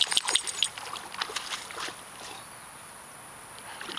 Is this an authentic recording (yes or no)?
yes